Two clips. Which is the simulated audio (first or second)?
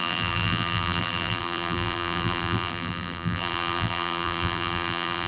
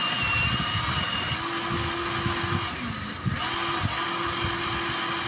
first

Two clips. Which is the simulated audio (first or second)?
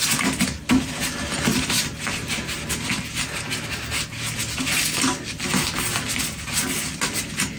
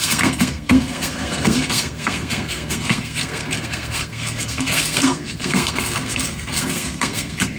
second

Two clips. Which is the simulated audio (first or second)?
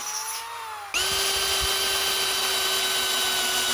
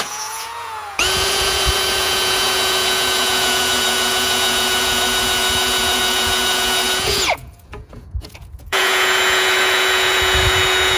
second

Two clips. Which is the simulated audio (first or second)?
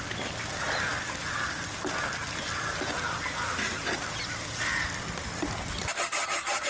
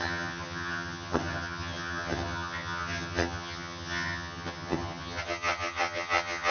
second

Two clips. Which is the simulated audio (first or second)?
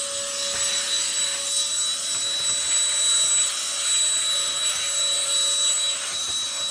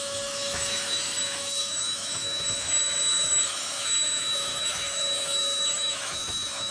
second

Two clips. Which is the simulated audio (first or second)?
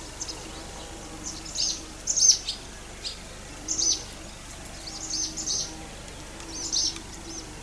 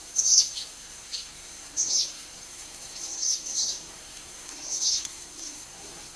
second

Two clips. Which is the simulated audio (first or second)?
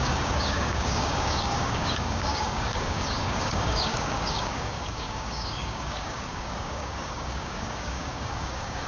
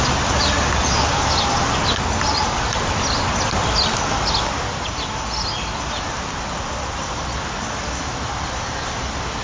first